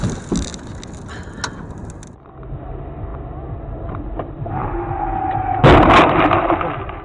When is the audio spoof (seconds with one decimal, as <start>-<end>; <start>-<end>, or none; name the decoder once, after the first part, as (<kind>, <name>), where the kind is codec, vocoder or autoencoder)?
none